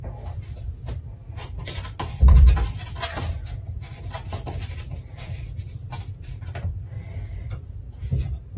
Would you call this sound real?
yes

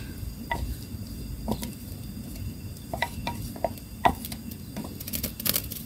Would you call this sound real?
yes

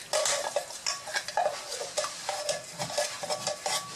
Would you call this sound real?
yes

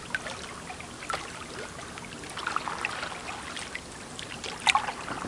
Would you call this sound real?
yes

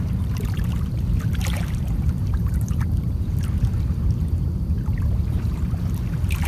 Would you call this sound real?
no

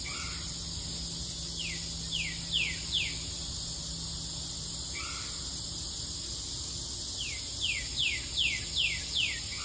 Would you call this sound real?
yes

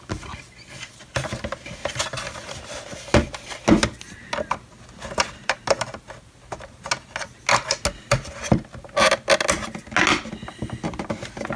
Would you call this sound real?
yes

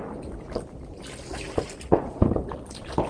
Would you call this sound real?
yes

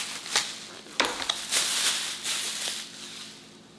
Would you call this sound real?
yes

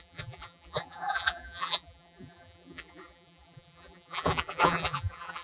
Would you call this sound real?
no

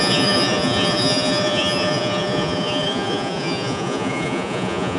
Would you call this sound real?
no